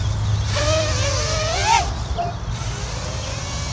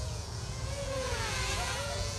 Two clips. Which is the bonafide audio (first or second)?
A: first